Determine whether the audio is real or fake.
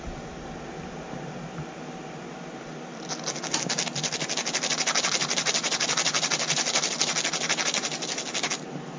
real